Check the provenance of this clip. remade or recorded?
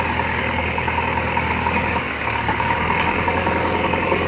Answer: remade